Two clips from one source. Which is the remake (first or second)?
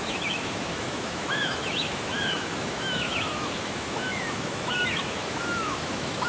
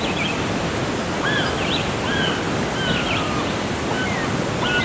first